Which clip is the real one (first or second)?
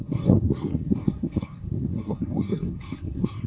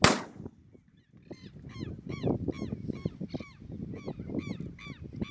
second